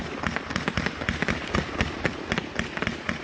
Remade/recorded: recorded